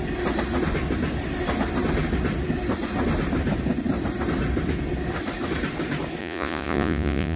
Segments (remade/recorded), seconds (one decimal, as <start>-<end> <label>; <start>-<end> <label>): 0.0-6.2 recorded; 6.2-7.4 remade